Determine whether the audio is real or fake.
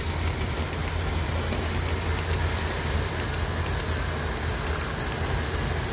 real